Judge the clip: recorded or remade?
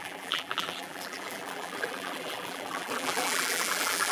remade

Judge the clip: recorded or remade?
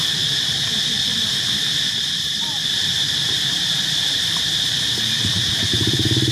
remade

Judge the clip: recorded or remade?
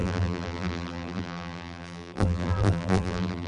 remade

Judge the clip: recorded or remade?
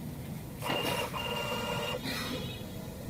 remade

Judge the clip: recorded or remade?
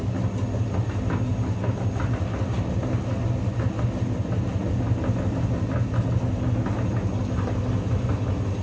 recorded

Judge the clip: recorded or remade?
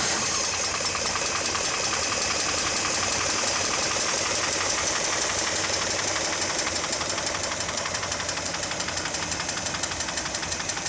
remade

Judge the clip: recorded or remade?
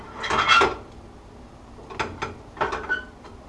recorded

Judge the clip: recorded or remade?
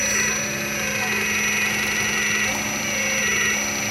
recorded